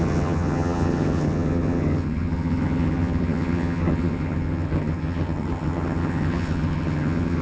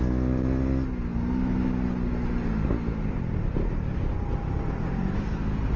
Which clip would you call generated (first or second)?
first